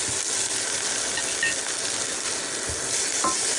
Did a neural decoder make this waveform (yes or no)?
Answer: no